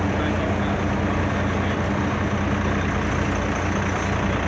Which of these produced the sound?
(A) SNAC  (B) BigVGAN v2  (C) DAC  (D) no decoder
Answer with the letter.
D